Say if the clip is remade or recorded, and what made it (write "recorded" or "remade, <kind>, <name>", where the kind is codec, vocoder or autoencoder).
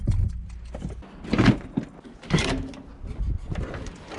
recorded